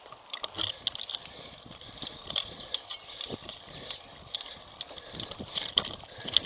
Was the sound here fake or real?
real